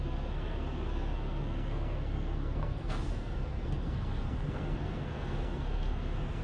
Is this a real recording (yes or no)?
no